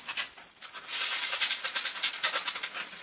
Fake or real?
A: real